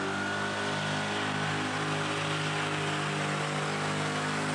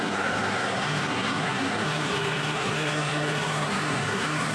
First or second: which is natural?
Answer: first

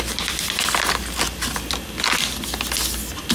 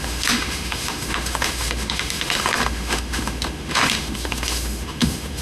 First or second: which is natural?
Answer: first